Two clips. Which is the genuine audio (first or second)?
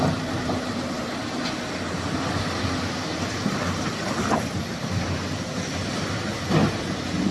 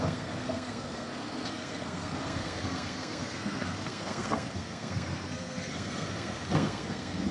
first